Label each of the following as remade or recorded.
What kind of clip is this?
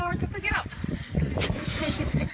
remade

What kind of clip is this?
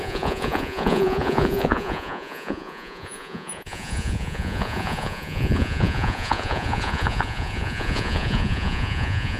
remade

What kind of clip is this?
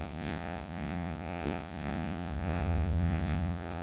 remade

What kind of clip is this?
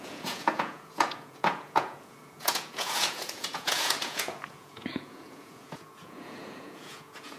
remade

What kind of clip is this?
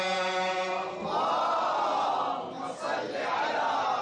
recorded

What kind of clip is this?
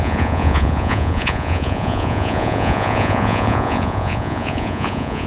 remade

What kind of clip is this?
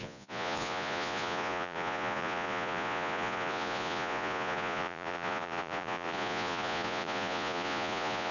remade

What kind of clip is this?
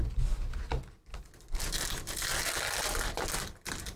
recorded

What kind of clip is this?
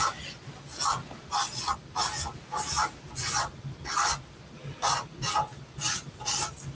recorded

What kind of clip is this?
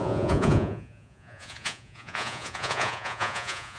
remade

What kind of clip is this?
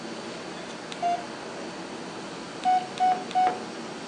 recorded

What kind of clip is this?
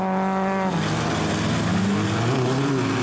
recorded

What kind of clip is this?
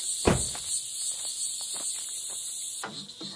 recorded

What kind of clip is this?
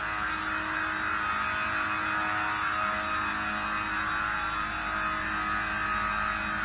recorded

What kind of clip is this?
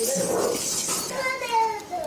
recorded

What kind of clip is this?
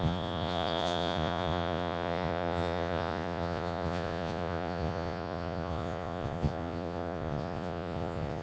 remade